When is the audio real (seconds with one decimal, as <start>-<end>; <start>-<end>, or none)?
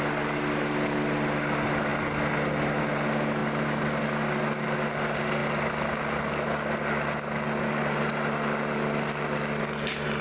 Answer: 0.0-10.2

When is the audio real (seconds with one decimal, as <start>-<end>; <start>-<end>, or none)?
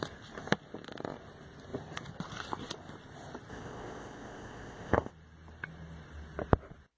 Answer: 0.0-3.5; 5.1-7.0